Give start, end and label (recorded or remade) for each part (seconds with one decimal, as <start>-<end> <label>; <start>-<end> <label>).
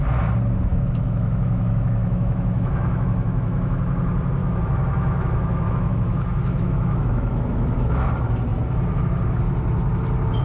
0.0-0.7 recorded; 0.7-3.8 remade; 3.8-4.4 recorded; 4.4-8.1 remade; 8.1-10.4 recorded